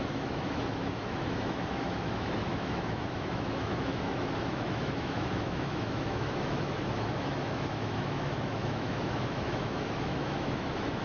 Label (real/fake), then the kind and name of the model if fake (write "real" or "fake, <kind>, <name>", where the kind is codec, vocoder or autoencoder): fake, autoencoder, DAC-VAE